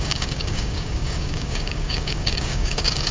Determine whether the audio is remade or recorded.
remade